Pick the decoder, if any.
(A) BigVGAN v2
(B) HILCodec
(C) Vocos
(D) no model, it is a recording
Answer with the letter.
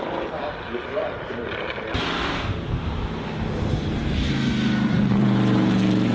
D